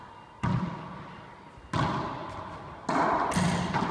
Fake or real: real